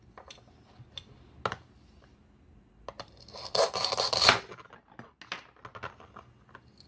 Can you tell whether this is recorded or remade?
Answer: recorded